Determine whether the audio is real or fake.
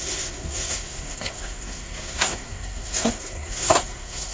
fake